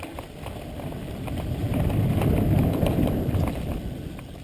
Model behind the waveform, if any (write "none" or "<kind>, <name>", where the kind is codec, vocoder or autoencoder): vocoder, BigVGAN v2